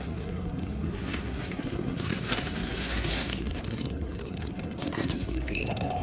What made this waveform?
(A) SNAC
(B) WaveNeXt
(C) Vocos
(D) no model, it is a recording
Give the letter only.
A